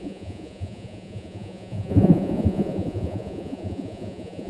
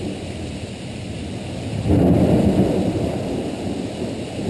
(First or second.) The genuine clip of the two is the second